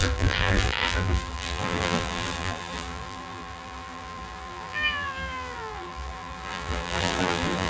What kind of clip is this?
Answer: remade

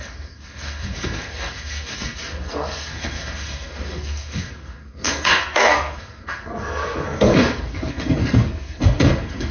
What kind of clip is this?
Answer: remade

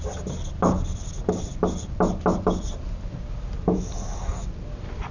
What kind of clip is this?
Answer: recorded